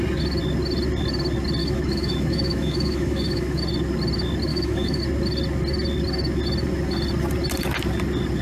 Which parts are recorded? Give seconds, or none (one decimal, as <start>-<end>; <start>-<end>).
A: 0.0-1.6; 3.6-4.5; 5.0-8.4